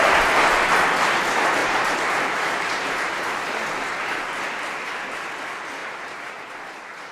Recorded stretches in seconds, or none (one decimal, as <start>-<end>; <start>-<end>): 0.0-1.6; 3.5-5.8; 6.5-7.1